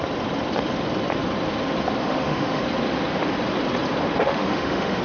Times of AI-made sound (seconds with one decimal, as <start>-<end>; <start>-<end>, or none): 2.0-2.6; 4.2-5.0